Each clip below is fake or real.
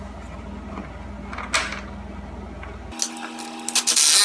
real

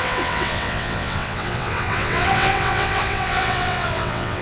fake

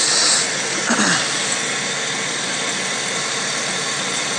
real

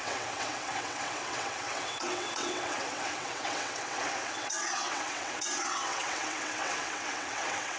fake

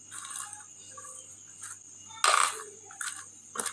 real